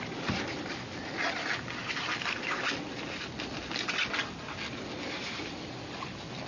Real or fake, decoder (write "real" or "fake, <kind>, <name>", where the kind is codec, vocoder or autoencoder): real